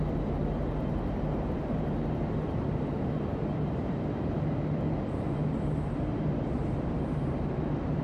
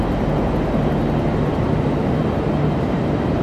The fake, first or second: first